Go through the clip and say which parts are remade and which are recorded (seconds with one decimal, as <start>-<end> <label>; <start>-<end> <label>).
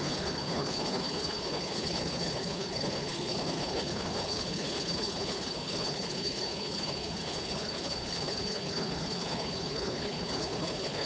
0.0-11.1 remade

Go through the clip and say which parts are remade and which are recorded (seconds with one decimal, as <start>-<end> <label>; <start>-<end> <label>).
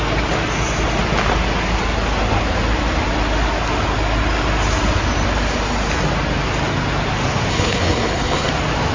0.0-7.5 recorded; 7.5-8.5 remade; 8.5-8.9 recorded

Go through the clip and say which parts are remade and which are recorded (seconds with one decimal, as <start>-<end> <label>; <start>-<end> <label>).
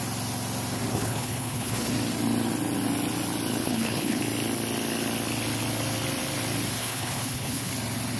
0.0-0.9 recorded; 0.9-1.9 remade; 1.9-3.6 recorded; 3.6-4.2 remade; 4.2-6.8 recorded; 6.8-7.7 remade; 7.7-8.2 recorded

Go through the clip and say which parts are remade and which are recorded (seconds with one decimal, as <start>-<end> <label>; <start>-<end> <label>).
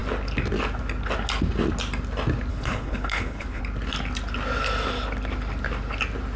0.0-2.5 recorded; 2.5-3.6 remade; 3.6-6.4 recorded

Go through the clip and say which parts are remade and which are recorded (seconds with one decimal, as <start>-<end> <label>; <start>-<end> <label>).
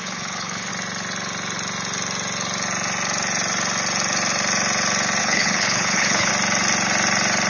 0.0-0.7 remade; 0.7-5.2 recorded; 5.2-6.3 remade; 6.3-7.5 recorded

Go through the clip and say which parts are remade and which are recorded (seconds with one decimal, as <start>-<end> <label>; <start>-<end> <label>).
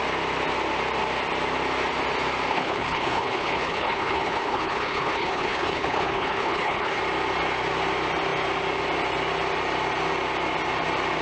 0.0-2.5 recorded; 2.5-7.0 remade; 7.0-11.2 recorded